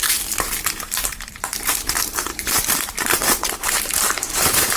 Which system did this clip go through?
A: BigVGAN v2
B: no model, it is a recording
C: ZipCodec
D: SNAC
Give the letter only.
A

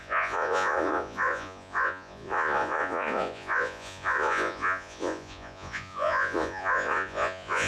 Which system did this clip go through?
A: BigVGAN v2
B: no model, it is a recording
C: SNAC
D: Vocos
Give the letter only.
D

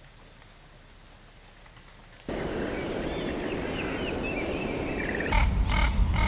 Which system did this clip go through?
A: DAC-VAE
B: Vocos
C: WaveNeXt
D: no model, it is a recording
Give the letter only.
D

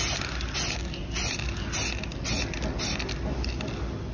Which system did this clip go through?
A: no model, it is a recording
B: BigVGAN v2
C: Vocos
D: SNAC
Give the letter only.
A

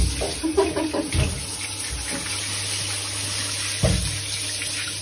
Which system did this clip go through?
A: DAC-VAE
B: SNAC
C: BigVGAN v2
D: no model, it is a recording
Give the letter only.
D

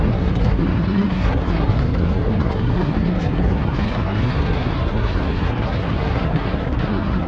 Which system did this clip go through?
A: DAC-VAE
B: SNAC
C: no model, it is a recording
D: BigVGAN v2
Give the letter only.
B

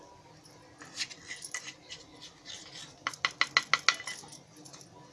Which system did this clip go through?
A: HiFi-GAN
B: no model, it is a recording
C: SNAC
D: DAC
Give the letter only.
B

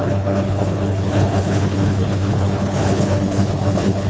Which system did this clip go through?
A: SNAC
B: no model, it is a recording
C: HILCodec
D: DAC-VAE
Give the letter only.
C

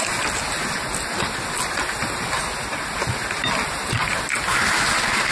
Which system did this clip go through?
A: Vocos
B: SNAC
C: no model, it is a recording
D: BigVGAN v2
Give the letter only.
C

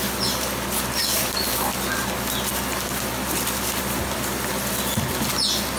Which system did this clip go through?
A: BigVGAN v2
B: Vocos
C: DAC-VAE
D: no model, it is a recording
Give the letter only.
D